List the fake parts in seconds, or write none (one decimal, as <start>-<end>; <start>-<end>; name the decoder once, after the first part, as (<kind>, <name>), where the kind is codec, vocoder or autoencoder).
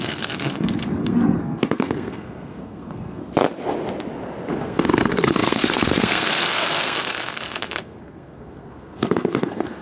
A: 0.0-3.2 (codec, SNAC); 4.5-9.8